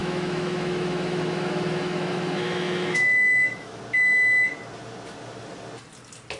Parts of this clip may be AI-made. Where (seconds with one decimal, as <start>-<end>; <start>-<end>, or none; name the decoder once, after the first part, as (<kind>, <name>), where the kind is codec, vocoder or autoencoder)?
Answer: 0.0-3.8 (autoencoder, DAC-VAE)